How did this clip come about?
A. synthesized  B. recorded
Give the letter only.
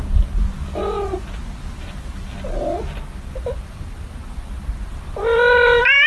B